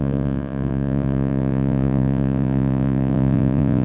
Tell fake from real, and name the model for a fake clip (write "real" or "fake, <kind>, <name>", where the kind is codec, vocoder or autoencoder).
fake, vocoder, Vocos